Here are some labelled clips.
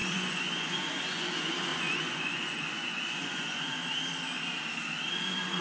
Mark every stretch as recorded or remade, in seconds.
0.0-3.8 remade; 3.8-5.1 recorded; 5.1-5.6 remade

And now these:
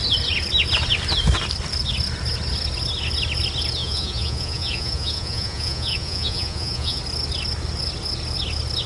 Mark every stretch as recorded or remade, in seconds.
0.0-3.8 recorded; 3.8-7.0 remade; 7.0-8.9 recorded

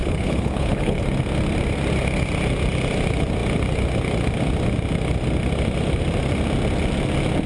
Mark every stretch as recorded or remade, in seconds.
0.0-1.0 remade; 1.0-7.5 recorded

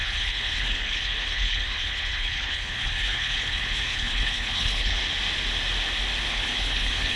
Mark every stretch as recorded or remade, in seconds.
0.0-5.0 remade; 5.0-6.3 recorded; 6.3-7.2 remade

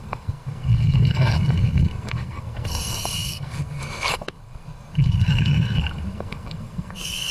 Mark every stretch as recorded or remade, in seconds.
0.0-7.3 remade